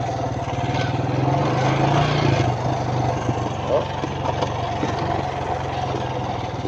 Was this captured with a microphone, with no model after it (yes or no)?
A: yes